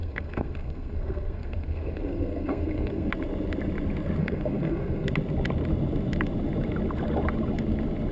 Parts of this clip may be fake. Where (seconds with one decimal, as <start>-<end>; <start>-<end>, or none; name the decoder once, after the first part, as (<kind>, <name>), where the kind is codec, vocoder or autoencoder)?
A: 0.0-3.1 (codec, SNAC); 4.2-5.1